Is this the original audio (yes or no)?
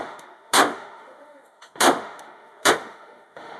no